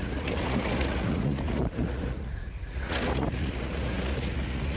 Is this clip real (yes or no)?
no